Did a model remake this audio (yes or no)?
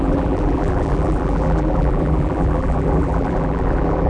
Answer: yes